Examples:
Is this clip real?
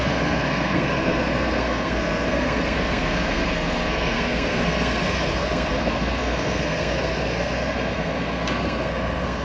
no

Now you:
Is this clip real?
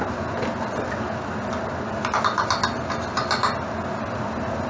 yes